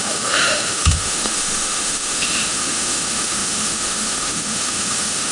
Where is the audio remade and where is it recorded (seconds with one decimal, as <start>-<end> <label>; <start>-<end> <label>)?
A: 0.0-5.3 remade